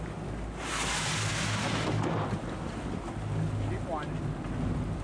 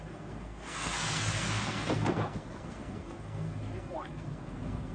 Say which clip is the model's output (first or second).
second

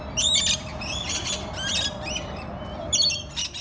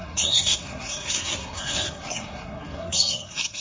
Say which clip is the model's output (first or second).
second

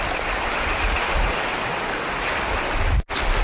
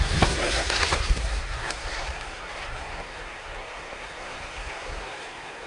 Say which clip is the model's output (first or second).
second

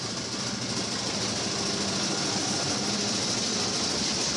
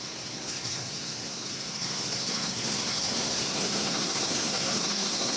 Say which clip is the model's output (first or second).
second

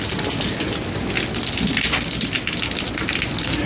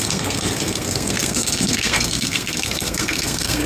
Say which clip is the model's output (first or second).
second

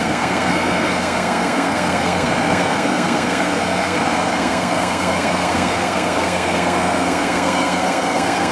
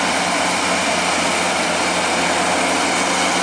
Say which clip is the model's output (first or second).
first